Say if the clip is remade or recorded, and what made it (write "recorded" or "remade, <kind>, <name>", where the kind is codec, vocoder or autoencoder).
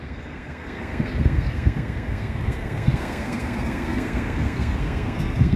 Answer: remade, codec, SNAC